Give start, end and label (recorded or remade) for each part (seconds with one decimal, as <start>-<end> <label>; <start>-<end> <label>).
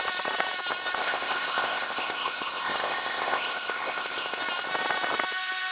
0.0-1.0 recorded; 1.0-4.4 remade; 4.4-5.7 recorded